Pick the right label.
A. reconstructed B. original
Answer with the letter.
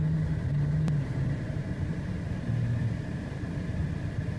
B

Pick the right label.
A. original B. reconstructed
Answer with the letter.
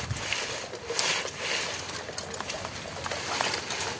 A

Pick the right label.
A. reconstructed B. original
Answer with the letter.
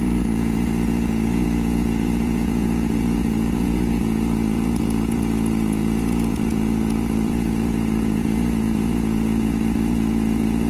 A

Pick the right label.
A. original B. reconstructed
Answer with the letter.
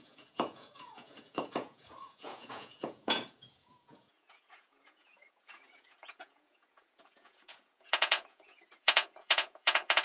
B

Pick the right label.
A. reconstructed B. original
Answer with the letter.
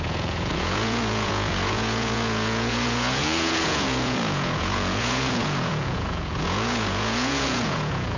A